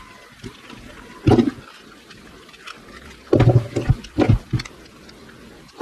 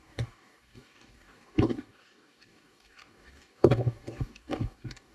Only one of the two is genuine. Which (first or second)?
first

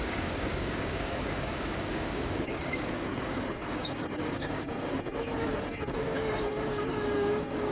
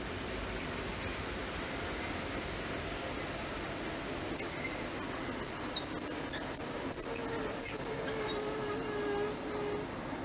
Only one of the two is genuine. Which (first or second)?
second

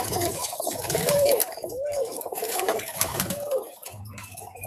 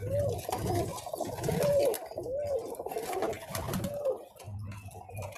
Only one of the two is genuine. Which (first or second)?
second